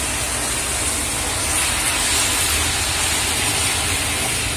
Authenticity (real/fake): real